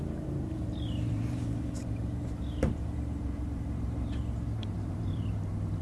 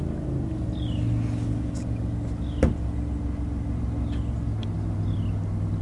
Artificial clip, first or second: first